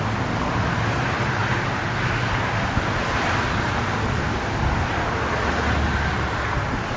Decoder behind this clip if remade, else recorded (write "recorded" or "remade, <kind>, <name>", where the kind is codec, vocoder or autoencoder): recorded